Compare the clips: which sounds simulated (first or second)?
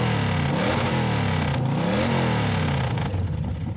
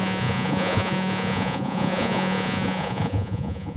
second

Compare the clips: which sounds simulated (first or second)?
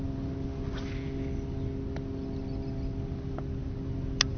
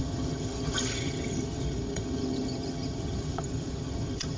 second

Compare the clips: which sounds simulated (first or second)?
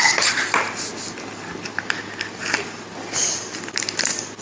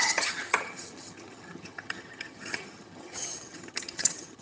second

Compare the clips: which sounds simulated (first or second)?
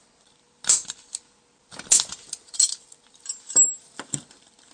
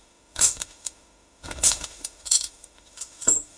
second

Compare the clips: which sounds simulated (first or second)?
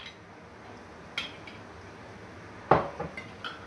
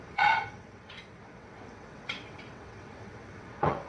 second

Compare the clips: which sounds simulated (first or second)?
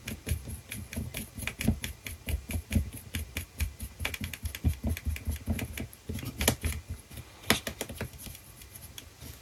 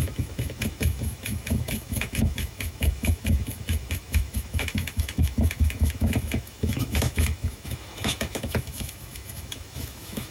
second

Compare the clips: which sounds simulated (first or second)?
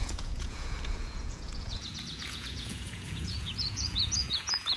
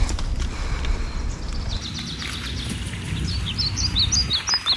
first